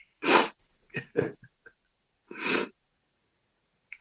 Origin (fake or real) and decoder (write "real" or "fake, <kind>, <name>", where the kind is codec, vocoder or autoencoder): fake, vocoder, Vocos